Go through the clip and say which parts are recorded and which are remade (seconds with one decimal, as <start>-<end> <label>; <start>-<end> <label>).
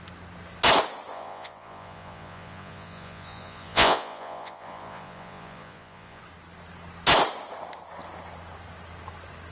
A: 0.0-1.1 recorded; 1.1-6.2 remade; 6.2-9.5 recorded